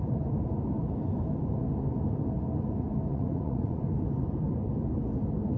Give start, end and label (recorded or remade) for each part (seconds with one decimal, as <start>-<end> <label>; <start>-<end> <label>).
0.0-3.1 recorded; 3.1-3.8 remade; 3.8-5.6 recorded